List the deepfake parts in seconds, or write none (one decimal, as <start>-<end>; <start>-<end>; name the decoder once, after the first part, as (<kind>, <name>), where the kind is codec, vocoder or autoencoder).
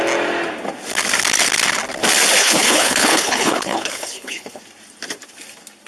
2.4-4.6 (codec, HILCodec)